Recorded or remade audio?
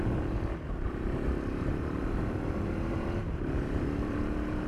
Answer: remade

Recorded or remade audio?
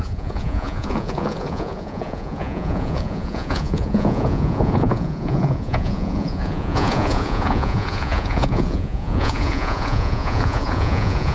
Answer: remade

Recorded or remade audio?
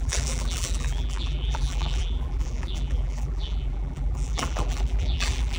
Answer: remade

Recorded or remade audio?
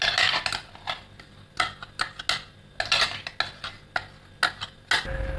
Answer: recorded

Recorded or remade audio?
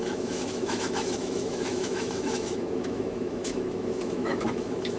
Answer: remade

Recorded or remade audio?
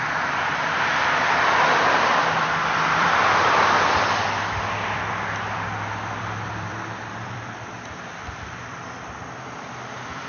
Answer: remade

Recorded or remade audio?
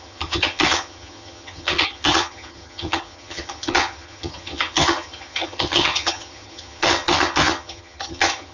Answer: remade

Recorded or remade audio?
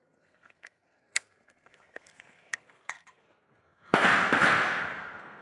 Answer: remade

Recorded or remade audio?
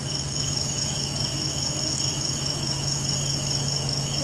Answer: remade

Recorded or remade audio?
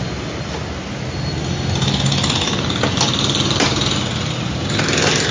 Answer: recorded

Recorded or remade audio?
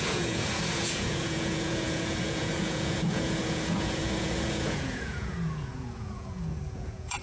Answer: remade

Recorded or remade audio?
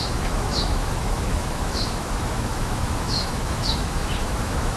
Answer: remade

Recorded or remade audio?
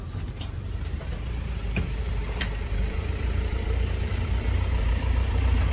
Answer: remade